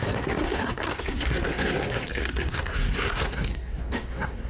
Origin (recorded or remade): remade